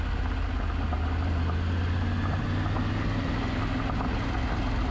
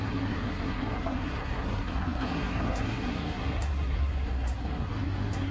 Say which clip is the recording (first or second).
first